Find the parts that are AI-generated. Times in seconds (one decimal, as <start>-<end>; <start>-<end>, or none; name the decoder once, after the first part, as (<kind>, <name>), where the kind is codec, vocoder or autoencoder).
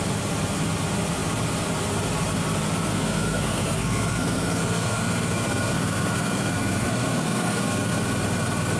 2.9-8.0 (codec, SNAC)